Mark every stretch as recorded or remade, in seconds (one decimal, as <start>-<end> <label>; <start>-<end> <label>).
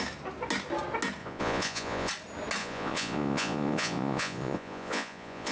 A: 0.0-1.2 recorded; 1.2-2.1 remade; 2.1-2.6 recorded; 2.6-5.5 remade